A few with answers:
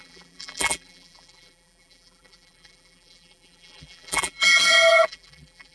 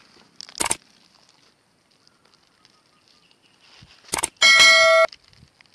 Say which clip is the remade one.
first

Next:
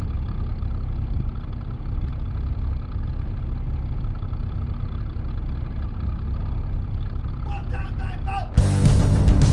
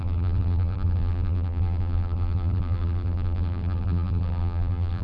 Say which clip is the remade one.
second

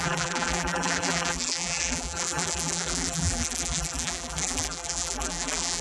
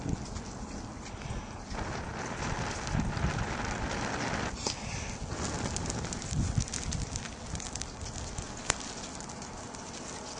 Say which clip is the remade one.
first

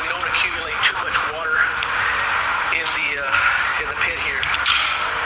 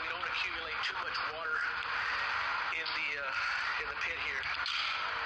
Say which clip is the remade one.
first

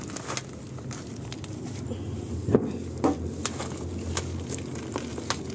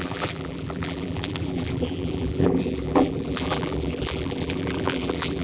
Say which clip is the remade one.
second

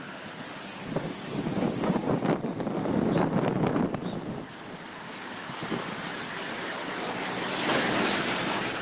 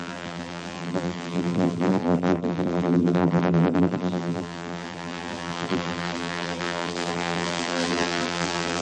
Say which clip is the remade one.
second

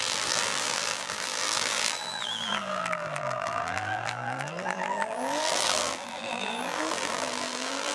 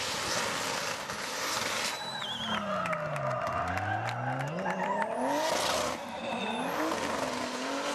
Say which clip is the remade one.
first